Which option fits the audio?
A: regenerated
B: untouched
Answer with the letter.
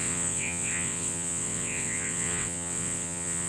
A